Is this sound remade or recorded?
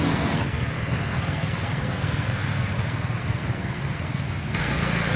remade